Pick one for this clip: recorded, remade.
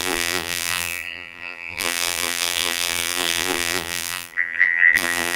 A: remade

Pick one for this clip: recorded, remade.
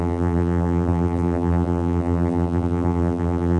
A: remade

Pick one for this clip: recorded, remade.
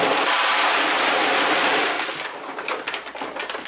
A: recorded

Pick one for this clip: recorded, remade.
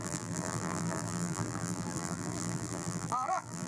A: remade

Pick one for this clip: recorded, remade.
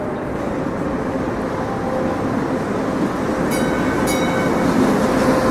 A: recorded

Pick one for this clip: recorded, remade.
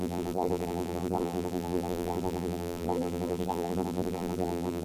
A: remade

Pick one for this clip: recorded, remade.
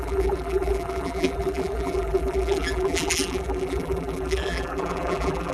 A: remade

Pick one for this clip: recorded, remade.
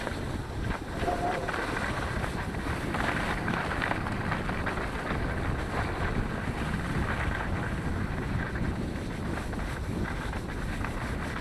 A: recorded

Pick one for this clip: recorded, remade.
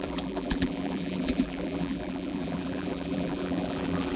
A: remade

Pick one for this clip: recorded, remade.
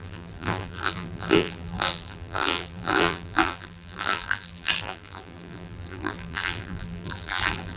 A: remade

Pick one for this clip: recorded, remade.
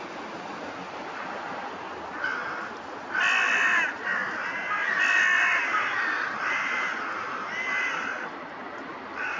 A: recorded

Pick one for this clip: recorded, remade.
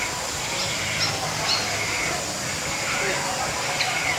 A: recorded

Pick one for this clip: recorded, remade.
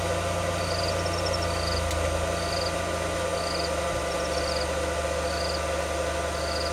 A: recorded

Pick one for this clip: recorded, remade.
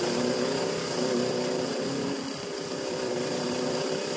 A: recorded